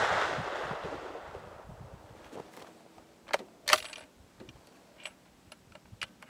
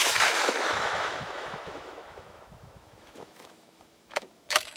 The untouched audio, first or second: first